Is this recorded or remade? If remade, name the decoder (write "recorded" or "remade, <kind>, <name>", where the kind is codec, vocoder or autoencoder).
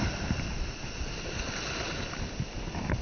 recorded